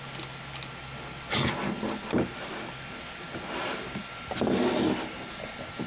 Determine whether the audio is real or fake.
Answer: real